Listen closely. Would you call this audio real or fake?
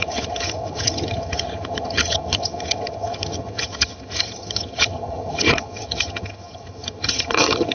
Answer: fake